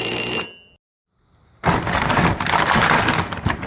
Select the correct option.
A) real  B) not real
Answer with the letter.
A